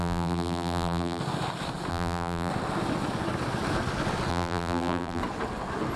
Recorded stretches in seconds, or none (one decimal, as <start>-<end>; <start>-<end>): 1.2-1.9; 2.5-4.3; 5.2-6.0